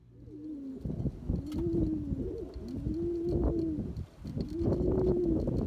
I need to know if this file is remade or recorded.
recorded